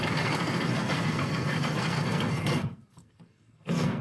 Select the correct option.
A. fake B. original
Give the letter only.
A